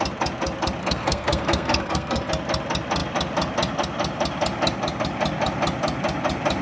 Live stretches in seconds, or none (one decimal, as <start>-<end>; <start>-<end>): 0.0-0.8; 2.3-6.6